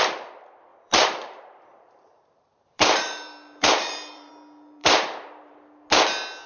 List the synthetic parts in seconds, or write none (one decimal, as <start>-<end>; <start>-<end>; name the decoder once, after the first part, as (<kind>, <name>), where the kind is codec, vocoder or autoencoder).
0.7-4.3 (vocoder, BigVGAN v2); 4.8-5.5